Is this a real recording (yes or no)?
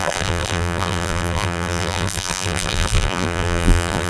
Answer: no